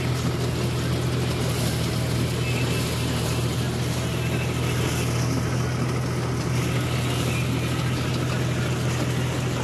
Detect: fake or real real